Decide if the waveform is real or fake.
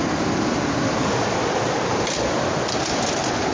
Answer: real